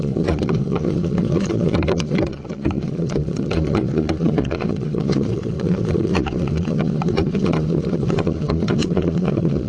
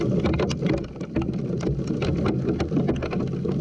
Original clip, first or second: second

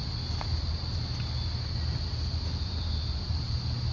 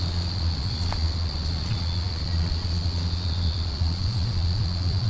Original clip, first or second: first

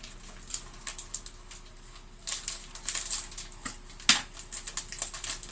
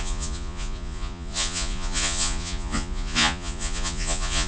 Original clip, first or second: first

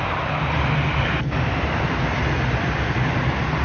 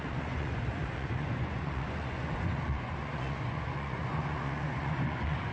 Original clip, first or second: first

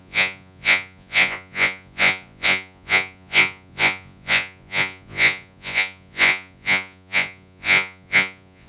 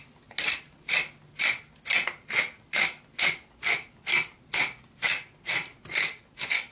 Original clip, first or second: second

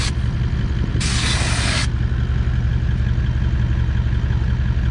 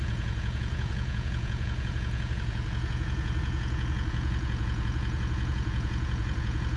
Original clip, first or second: first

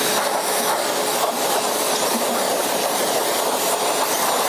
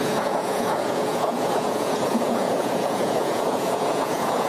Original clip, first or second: first